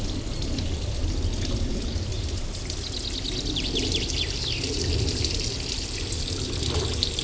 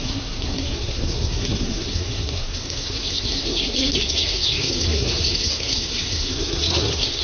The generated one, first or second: second